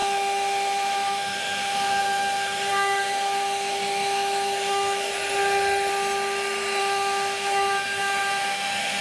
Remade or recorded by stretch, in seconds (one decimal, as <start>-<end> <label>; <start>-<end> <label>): 0.0-5.1 remade; 5.1-6.8 recorded; 6.8-9.0 remade